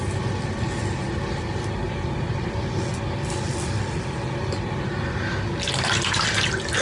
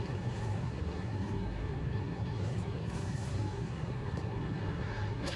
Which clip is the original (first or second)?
first